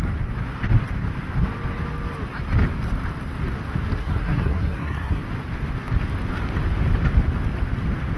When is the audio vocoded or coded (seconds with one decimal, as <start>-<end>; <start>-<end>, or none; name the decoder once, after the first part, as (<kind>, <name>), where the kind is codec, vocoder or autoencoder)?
4.0-5.2 (codec, SNAC)